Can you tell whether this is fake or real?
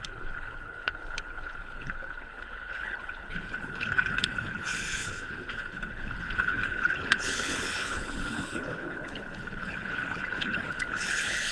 fake